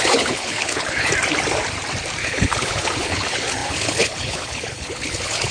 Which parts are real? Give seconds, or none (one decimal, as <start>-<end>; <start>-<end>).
1.1-2.2